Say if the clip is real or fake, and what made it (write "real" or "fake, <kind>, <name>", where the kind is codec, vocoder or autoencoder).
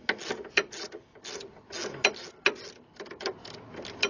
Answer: real